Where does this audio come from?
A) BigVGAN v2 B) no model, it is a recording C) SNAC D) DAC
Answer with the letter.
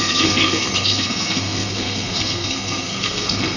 C